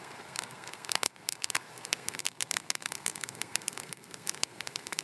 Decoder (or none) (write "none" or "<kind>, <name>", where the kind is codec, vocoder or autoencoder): codec, SNAC